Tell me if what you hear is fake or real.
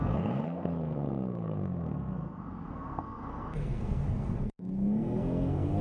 fake